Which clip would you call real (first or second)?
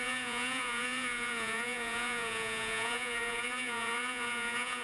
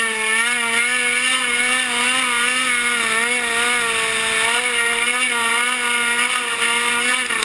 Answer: second